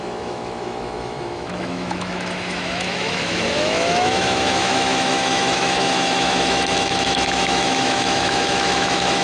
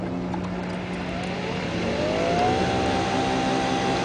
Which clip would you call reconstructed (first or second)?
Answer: first